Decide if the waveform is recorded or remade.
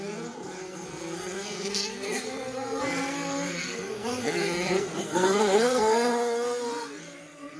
remade